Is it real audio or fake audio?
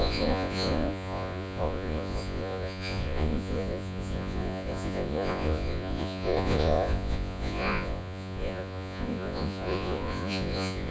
fake